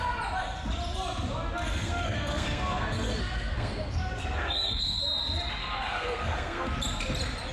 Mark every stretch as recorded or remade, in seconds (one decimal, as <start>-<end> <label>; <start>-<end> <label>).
0.0-1.7 recorded; 1.7-5.0 remade; 5.0-5.6 recorded; 5.6-6.7 remade; 6.7-7.5 recorded